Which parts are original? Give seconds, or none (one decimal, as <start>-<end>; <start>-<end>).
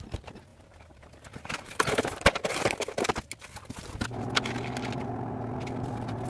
0.0-0.5; 3.0-6.3